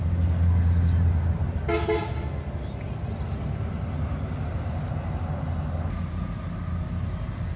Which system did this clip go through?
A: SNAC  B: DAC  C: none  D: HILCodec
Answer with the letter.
C